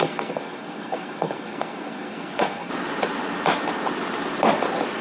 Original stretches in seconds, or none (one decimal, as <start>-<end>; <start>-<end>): 2.7-5.0